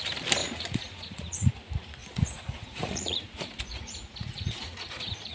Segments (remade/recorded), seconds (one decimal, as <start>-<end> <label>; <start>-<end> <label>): 0.0-0.4 recorded; 0.4-1.5 remade; 1.5-2.0 recorded; 2.0-5.3 remade